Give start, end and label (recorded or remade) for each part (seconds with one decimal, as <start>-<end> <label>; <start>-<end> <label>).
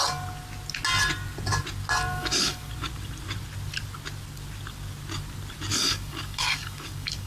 0.0-2.1 recorded; 2.1-2.7 remade; 2.7-5.7 recorded; 5.7-7.3 remade